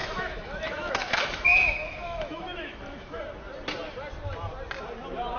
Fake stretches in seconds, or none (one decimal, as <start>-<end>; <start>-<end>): 0.0-3.2